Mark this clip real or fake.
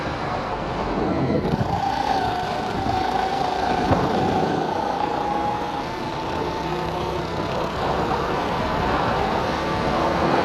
fake